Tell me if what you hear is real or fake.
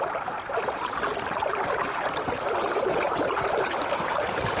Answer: fake